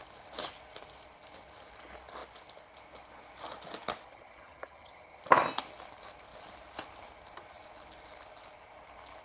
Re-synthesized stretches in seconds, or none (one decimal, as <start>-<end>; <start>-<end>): 4.0-5.2